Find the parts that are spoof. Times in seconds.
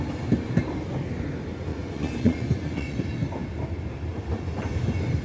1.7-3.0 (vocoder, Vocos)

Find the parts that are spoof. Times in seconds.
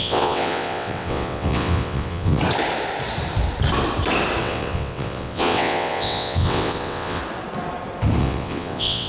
0.0-2.4 (vocoder, WaveNeXt); 4.4-7.2; 8.2-9.1